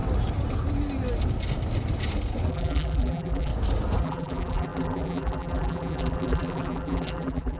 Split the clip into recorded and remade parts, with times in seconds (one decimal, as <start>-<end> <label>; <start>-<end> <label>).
0.0-2.5 recorded; 2.5-3.5 remade; 3.5-4.0 recorded; 4.0-7.6 remade